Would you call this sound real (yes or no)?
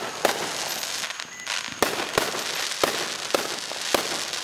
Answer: yes